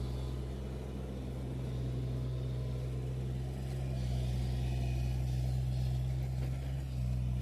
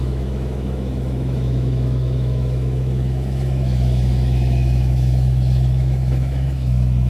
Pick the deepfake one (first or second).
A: second